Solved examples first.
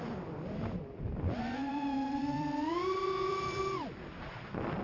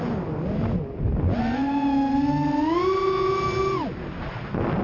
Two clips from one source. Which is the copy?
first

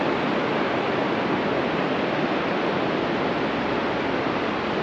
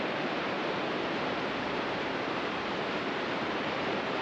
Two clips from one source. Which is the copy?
second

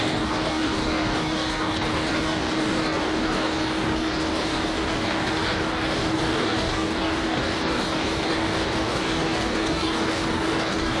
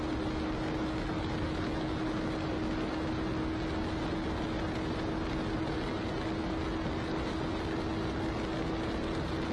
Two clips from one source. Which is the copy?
first